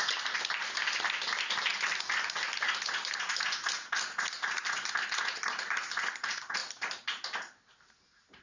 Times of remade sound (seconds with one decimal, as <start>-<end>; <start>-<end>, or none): none